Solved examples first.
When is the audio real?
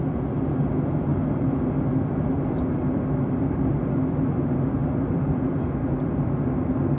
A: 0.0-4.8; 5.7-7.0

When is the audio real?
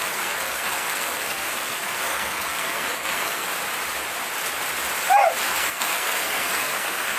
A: 3.5-5.4